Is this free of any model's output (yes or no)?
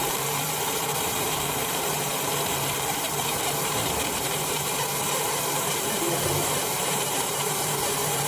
no